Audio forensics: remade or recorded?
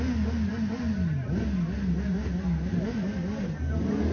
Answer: recorded